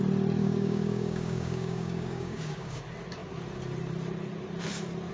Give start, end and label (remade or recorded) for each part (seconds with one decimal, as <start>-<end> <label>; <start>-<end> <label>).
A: 0.0-0.4 recorded; 0.4-2.8 remade; 2.8-5.1 recorded